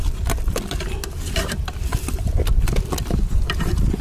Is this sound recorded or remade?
recorded